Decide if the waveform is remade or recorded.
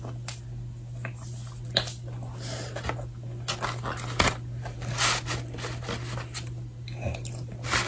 recorded